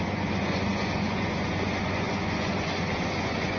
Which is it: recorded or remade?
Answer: remade